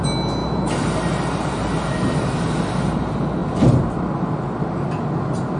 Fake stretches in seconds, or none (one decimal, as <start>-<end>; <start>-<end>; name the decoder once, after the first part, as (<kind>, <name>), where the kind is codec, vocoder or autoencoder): 0.4-1.5 (vocoder, BigVGAN v2); 3.4-4.8